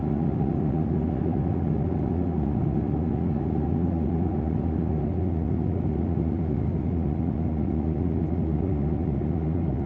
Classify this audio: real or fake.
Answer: fake